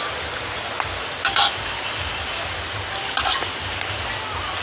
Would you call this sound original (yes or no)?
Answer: yes